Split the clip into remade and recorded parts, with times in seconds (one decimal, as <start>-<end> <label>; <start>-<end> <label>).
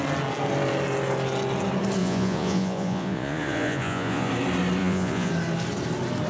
0.0-2.0 recorded; 2.0-4.3 remade; 4.3-4.8 recorded; 4.8-5.3 remade; 5.3-6.3 recorded